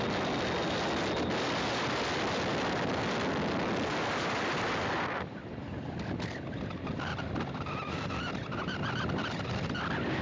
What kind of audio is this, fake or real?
real